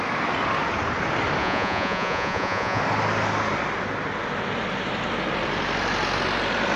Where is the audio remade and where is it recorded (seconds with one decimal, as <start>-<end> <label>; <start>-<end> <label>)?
0.0-1.4 recorded; 1.4-2.8 remade; 2.8-6.8 recorded